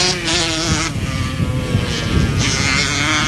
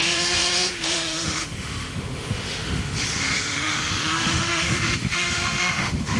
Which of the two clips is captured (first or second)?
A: first